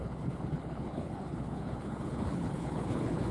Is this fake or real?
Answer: fake